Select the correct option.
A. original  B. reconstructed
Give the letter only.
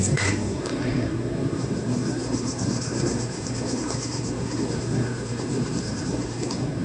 B